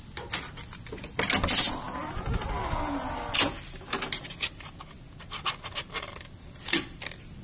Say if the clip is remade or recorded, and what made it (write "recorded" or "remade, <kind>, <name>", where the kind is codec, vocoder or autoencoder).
recorded